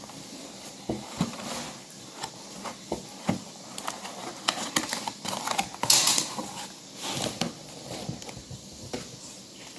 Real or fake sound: real